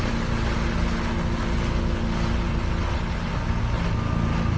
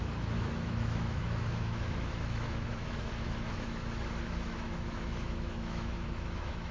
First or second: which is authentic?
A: first